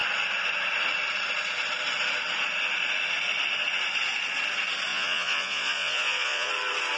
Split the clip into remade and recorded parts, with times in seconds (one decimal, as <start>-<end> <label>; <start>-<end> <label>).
0.0-4.9 recorded; 4.9-6.5 remade; 6.5-7.0 recorded